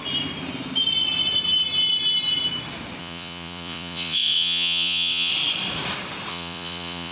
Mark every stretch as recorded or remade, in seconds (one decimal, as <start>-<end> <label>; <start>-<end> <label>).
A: 0.0-3.0 recorded; 3.0-5.3 remade; 5.3-6.3 recorded; 6.3-7.1 remade